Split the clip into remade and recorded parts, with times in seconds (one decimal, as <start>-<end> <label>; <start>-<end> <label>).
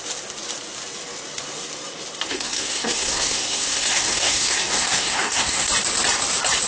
0.0-2.3 recorded; 2.3-5.7 remade; 5.7-6.7 recorded